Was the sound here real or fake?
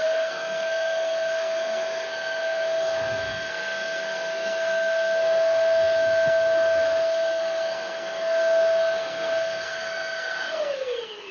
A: fake